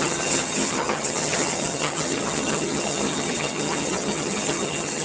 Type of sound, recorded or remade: remade